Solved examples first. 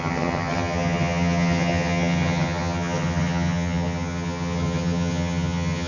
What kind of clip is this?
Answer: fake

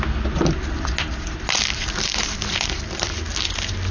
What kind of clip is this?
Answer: real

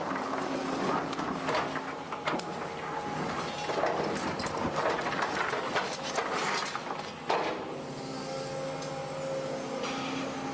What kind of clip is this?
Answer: real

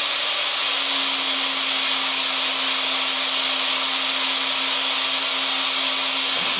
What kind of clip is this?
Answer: real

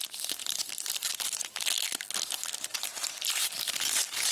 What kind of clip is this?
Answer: real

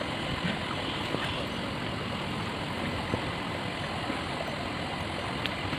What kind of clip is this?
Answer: real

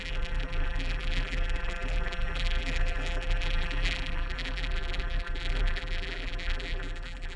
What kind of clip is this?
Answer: fake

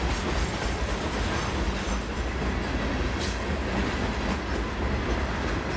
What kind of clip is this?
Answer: real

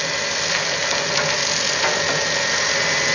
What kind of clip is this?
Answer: real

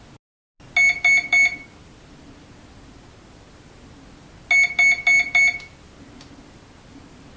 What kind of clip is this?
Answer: real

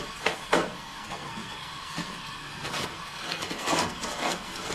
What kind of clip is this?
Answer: fake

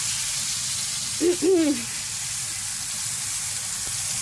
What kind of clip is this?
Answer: real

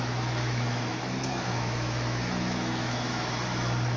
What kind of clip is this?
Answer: fake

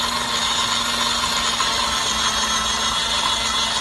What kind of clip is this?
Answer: real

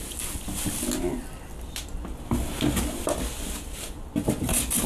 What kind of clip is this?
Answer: real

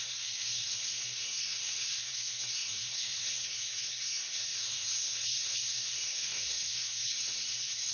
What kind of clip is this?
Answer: fake